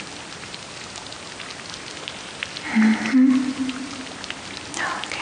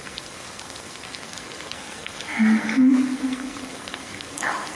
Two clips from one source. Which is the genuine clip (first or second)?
first